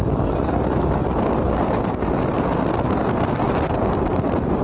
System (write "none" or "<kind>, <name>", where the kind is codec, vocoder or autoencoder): none